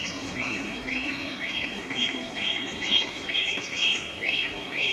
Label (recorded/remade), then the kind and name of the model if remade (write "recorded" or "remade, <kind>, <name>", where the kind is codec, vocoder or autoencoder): remade, codec, SNAC